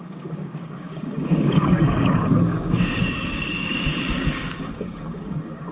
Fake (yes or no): yes